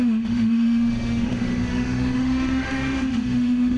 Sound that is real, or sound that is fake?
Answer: fake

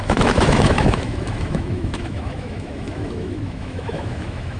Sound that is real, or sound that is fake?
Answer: fake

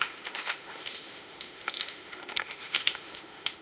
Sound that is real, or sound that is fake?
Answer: fake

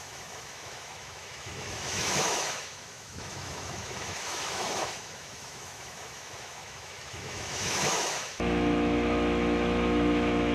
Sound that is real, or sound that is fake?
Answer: fake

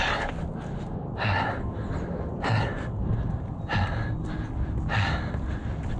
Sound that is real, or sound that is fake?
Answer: real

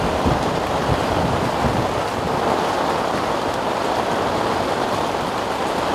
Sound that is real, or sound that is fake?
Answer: real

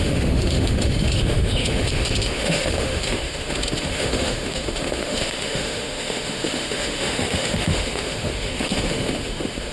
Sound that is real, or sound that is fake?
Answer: fake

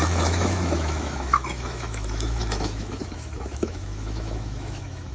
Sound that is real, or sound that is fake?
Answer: fake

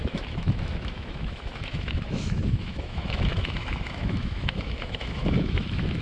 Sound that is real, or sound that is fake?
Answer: fake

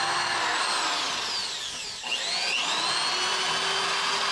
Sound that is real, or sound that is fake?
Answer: real